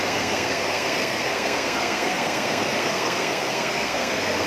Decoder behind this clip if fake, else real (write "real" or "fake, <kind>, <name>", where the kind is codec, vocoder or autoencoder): fake, codec, SNAC